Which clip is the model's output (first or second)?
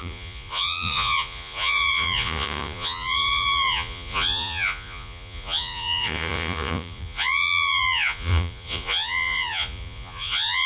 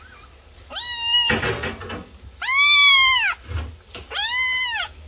first